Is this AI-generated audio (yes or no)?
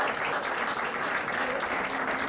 no